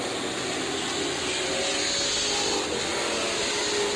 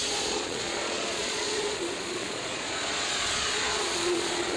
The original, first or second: first